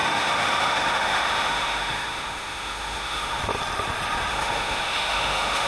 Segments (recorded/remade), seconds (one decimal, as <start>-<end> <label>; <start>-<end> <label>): 0.0-3.4 remade; 3.4-4.3 recorded; 4.3-5.7 remade